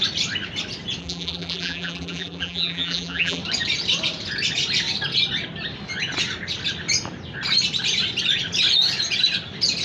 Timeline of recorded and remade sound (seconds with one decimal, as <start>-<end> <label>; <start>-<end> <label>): 0.0-1.0 recorded; 1.0-3.4 remade; 3.4-9.8 recorded